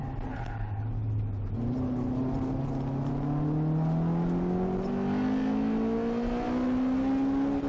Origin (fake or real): real